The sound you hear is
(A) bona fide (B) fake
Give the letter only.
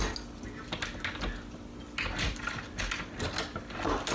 A